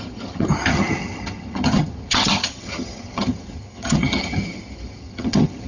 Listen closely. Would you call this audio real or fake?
fake